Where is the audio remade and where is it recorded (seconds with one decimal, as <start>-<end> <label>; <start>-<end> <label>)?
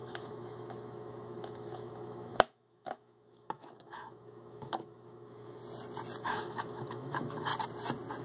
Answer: 0.0-5.6 remade; 5.6-6.2 recorded; 6.2-7.5 remade; 7.5-8.2 recorded